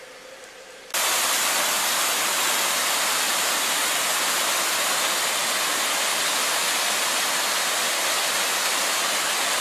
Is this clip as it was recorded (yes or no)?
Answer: yes